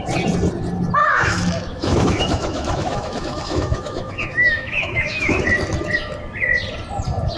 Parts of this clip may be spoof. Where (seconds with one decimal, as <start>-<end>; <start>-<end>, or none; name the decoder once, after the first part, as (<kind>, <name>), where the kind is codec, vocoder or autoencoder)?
1.0-5.4 (autoencoder, DAC-VAE)